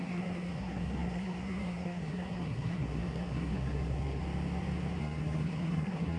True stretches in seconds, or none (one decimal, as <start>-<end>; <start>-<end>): 4.2-5.0